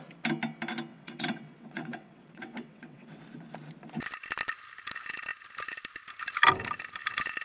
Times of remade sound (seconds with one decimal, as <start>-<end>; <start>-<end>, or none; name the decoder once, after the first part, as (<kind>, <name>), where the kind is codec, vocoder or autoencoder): 0.9-3.2 (vocoder, WaveNeXt)